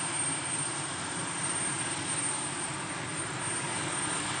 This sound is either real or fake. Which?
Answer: real